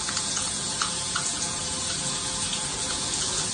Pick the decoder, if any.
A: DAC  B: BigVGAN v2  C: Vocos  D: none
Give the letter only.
C